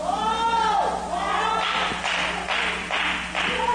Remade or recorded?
recorded